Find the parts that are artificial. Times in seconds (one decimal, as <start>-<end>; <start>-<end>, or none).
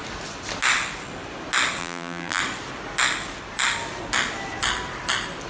1.8-2.4